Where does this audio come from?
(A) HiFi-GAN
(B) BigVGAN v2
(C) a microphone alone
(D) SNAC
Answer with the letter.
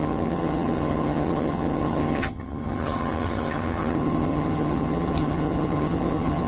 A